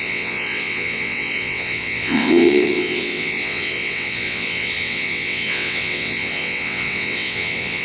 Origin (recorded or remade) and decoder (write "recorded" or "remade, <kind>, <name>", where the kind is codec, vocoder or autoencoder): remade, vocoder, WaveNeXt